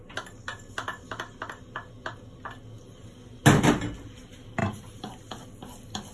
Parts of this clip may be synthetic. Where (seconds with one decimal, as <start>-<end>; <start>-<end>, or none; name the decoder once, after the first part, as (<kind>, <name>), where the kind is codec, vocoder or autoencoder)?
4.6-5.2 (vocoder, BigVGAN v2)